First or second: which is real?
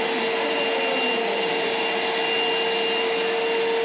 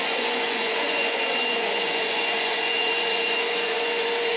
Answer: first